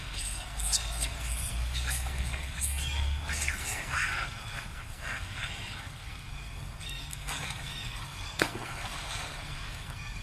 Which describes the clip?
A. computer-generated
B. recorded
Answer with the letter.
A